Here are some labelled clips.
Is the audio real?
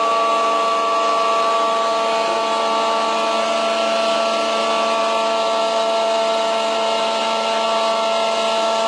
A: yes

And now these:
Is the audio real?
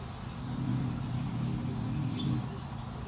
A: yes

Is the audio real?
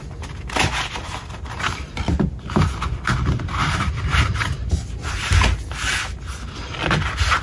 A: yes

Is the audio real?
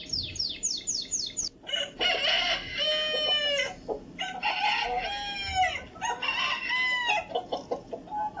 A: yes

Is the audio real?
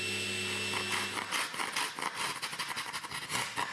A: yes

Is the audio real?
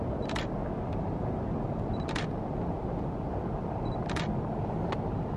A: yes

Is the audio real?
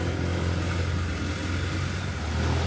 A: yes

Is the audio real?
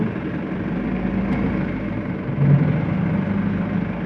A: yes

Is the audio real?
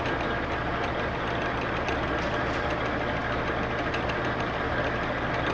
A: yes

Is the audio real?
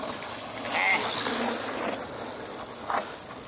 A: yes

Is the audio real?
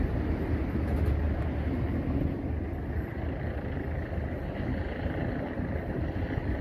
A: yes